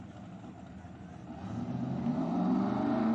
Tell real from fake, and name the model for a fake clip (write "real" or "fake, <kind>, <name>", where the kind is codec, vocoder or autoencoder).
real